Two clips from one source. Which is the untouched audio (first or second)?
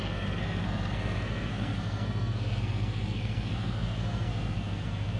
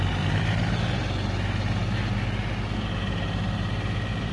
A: second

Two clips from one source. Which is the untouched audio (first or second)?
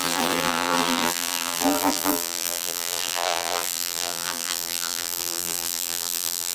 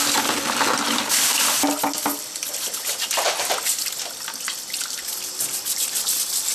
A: second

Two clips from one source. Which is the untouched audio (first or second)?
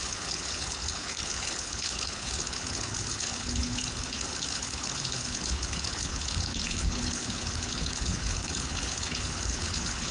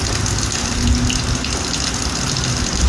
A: second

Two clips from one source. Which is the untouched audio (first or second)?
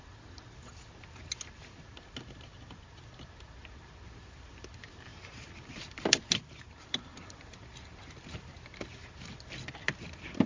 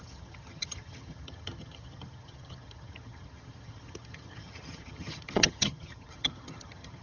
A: first